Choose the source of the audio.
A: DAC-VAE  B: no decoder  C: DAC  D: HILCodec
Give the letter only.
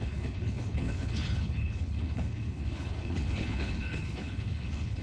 D